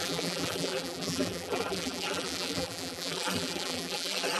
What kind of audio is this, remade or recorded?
remade